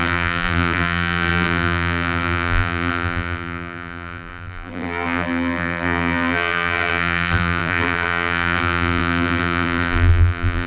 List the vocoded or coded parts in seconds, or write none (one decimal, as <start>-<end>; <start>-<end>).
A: 0.0-10.7